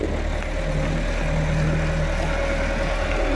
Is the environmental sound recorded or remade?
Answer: recorded